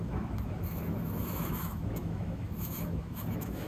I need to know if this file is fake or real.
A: fake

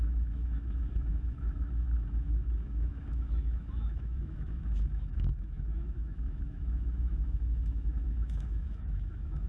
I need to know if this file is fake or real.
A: fake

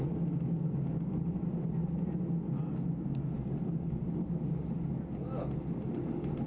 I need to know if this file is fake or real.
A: real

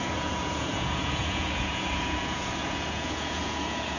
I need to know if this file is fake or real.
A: fake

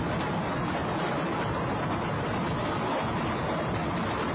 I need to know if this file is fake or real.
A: real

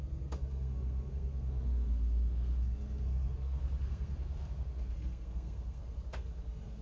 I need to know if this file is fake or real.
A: fake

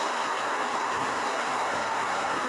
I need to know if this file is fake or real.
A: fake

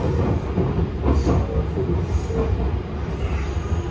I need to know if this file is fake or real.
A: real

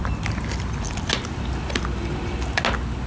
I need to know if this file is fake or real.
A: real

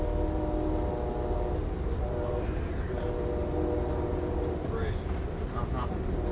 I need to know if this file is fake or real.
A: real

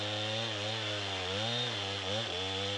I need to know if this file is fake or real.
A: real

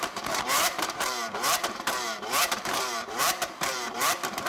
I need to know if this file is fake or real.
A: fake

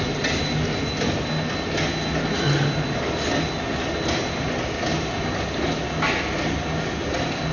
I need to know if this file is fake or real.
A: real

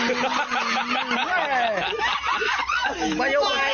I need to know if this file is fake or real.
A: real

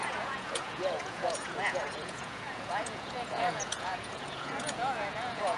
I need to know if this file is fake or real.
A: fake